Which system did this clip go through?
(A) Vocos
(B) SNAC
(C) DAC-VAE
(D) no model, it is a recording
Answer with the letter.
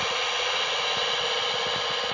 D